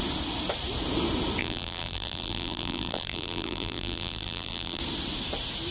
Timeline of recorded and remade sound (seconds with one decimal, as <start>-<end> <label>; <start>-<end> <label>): 0.0-1.4 recorded; 1.4-4.8 remade; 4.8-5.7 recorded